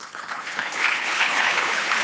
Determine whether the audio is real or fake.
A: fake